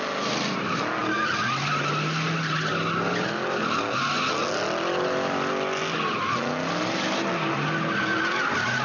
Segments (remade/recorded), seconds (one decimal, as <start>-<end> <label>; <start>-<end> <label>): 0.0-8.8 recorded

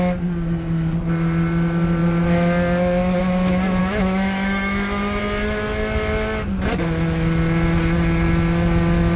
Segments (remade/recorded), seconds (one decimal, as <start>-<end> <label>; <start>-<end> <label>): 0.0-3.8 recorded; 3.8-5.2 remade; 5.2-9.2 recorded